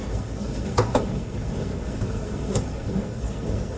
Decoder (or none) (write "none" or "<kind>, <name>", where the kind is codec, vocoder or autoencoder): codec, SNAC